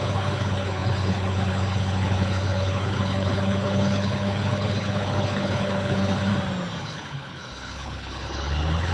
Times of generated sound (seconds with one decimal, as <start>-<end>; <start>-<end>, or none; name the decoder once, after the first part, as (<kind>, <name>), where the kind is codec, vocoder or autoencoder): 0.0-6.3 (codec, HILCodec); 6.8-8.9